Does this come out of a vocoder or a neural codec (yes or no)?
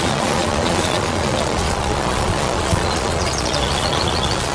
yes